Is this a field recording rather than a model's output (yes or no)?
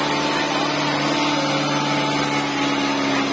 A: yes